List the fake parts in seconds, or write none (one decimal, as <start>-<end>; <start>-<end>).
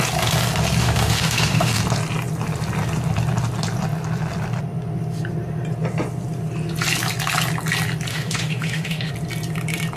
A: 0.8-1.8; 8.1-9.1